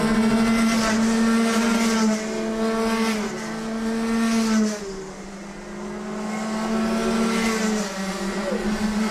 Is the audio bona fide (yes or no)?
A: yes